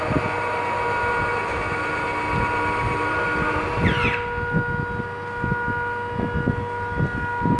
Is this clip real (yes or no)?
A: yes